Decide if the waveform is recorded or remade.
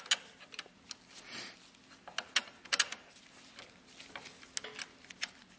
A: recorded